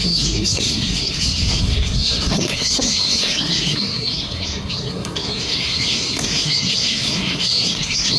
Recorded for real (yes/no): no